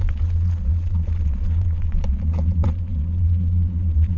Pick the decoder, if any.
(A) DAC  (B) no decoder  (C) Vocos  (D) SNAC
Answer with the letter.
C